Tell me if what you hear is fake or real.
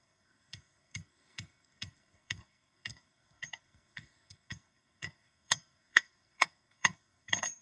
fake